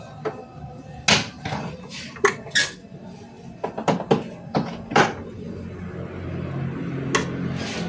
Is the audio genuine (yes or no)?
yes